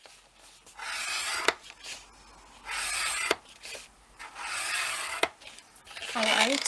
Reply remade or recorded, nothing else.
recorded